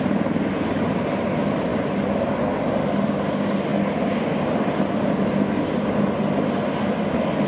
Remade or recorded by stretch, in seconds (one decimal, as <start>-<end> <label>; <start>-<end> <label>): 0.0-7.5 recorded